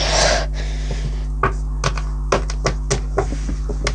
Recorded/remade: recorded